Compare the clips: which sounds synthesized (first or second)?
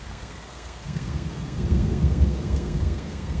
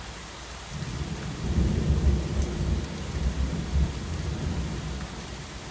first